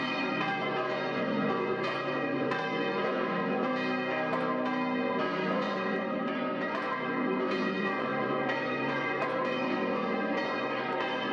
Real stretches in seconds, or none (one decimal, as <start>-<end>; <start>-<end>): 3.7-5.2